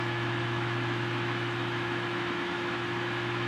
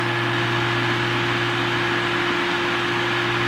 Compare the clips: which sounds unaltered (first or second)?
second